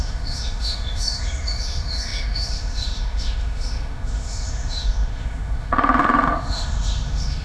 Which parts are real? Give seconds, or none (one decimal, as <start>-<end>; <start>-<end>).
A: none